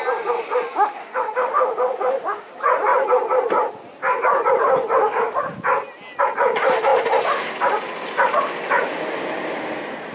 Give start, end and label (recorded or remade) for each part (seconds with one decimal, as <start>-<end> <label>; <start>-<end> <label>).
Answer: 0.0-1.0 recorded; 1.0-2.5 remade; 2.5-10.1 recorded